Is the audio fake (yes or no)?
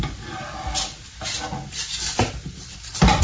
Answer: no